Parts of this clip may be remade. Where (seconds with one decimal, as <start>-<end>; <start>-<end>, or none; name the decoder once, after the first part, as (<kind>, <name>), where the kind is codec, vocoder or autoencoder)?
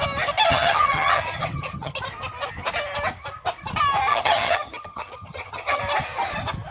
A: 0.5-2.0 (vocoder, HiFi-GAN); 4.1-5.8